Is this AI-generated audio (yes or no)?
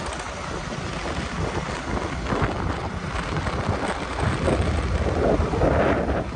no